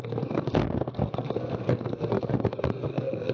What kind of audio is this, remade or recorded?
remade